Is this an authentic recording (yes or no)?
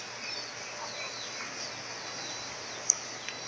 yes